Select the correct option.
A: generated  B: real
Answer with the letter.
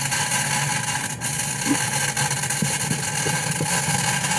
B